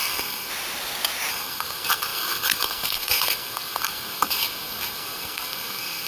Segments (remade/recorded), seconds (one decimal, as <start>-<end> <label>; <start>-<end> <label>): 0.0-0.5 remade; 0.5-1.3 recorded; 1.3-6.1 remade